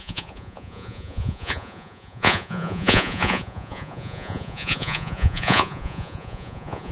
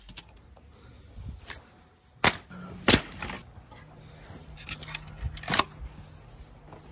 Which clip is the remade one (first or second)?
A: first